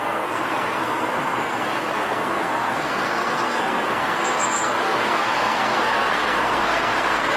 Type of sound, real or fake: fake